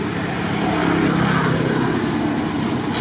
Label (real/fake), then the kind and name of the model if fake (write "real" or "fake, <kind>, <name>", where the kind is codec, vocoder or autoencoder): real